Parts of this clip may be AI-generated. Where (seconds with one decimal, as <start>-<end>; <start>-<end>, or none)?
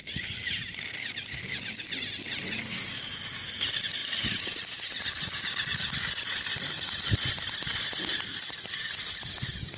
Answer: none